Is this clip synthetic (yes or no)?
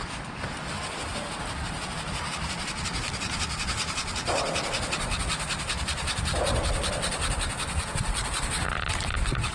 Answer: no